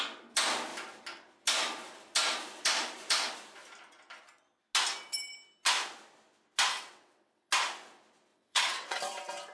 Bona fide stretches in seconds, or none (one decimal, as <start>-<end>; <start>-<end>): 0.0-6.7; 7.5-8.3; 9.0-9.5